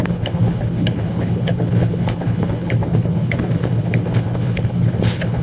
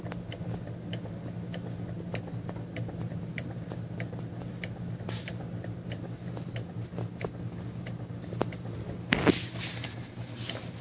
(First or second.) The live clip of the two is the second